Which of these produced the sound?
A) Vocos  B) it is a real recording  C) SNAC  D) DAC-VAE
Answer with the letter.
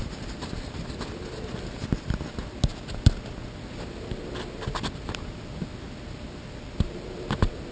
B